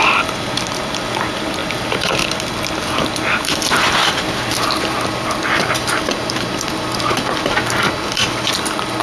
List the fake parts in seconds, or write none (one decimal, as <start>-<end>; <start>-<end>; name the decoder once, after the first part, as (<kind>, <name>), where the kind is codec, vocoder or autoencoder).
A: 1.6-2.2 (vocoder, BigVGAN v2); 5.5-6.5